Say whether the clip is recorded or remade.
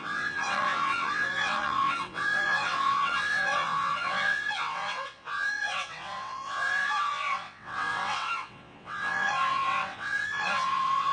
remade